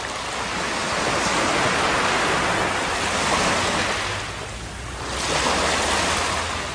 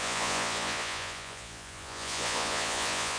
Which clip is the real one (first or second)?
first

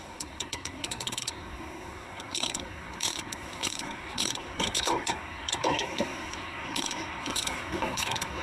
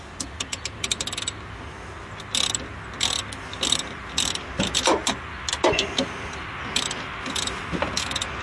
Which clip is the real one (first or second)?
second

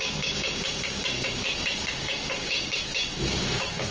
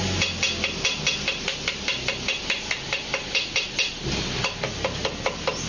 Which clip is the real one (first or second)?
second